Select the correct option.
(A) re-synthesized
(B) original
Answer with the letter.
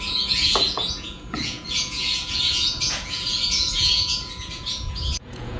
A